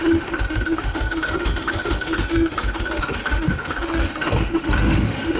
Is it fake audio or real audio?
fake